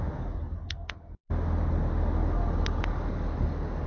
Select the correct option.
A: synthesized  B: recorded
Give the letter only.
B